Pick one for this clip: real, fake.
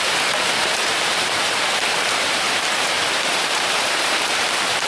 fake